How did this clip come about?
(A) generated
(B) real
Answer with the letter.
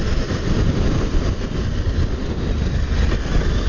B